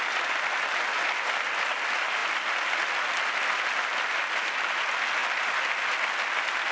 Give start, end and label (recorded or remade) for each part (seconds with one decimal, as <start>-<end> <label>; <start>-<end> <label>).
0.0-6.7 recorded